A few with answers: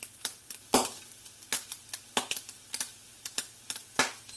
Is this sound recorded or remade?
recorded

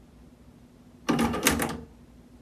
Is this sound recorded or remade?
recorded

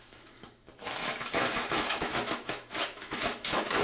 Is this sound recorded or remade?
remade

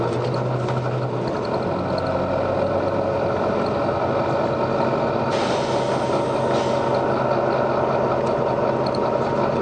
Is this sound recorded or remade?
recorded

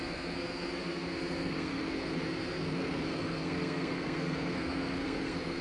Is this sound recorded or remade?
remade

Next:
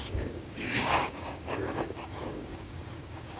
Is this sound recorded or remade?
remade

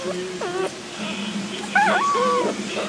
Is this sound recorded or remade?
recorded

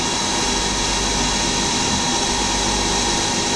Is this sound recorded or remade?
recorded